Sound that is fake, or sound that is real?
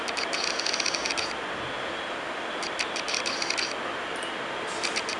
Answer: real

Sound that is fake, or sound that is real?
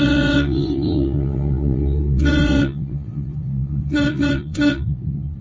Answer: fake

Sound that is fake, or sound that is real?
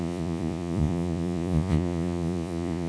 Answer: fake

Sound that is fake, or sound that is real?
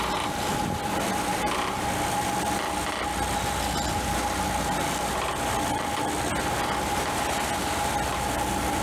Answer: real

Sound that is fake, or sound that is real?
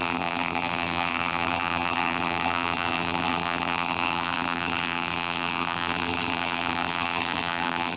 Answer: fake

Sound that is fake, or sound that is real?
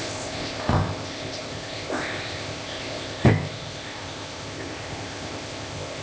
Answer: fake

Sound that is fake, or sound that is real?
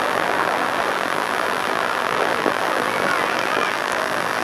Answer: fake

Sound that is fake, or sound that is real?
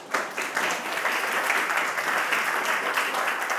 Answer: real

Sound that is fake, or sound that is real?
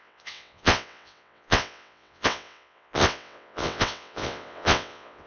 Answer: fake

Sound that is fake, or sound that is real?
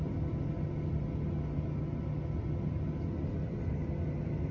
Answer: real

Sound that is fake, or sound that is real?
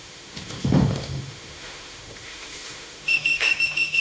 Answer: fake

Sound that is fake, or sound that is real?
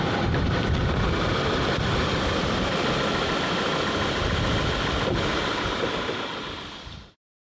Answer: real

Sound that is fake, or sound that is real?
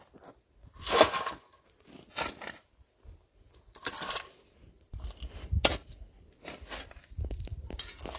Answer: real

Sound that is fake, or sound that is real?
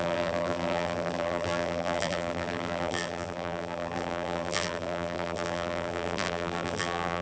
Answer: fake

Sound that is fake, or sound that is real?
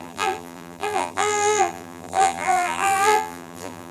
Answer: fake